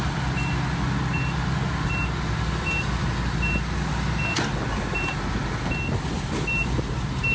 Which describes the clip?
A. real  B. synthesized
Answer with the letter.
A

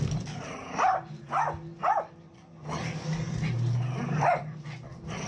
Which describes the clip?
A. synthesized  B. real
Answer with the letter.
B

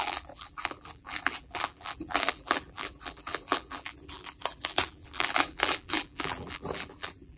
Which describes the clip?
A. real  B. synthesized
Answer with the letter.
B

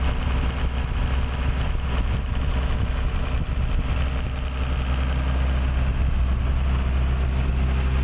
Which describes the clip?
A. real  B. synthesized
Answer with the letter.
A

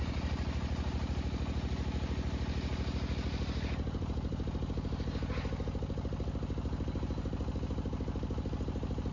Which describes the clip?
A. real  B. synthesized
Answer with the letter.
A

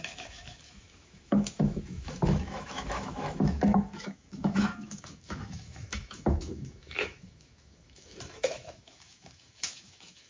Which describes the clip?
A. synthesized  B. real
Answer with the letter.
A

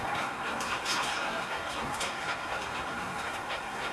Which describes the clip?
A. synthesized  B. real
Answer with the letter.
A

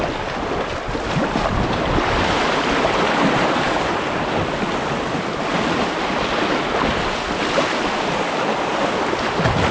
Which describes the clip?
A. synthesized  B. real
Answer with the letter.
B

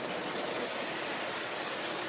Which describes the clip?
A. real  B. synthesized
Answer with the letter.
A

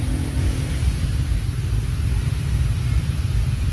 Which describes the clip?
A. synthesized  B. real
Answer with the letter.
B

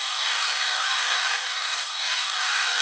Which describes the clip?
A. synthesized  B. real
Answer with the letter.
A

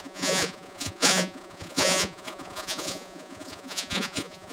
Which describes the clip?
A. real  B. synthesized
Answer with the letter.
B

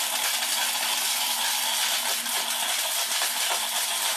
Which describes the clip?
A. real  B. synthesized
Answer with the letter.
A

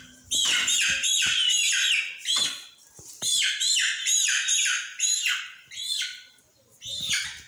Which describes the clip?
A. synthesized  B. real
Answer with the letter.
B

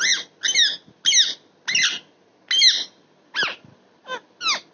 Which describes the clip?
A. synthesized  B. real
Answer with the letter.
B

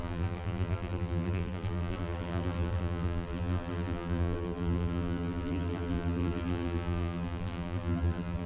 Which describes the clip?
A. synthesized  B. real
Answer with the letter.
A